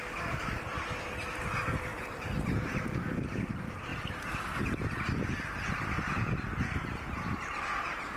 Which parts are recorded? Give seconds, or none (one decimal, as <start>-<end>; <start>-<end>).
0.0-8.2